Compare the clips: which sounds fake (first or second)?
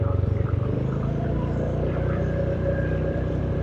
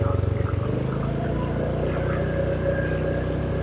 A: first